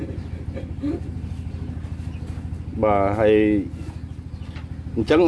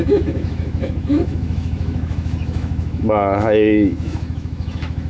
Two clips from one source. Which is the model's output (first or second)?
second